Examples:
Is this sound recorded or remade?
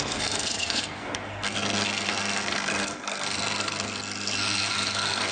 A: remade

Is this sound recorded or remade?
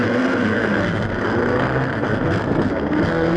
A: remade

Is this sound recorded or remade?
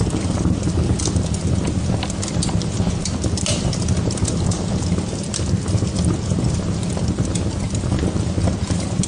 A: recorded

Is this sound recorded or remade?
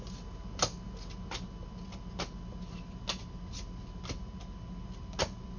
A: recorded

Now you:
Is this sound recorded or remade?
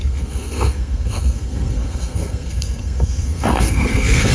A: remade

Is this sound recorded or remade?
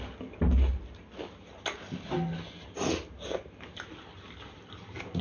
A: recorded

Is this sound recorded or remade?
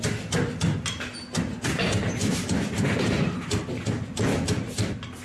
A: recorded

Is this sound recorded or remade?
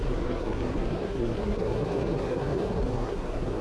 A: remade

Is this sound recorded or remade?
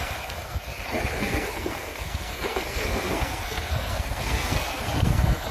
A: remade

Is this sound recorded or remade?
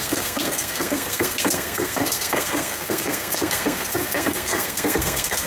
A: remade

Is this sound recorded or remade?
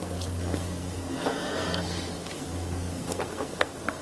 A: remade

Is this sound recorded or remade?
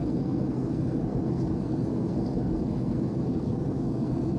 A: remade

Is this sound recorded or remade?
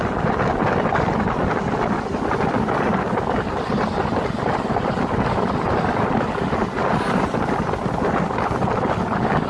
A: recorded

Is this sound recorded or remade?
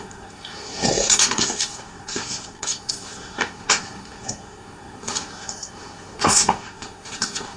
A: remade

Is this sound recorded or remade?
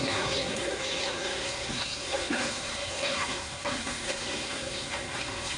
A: remade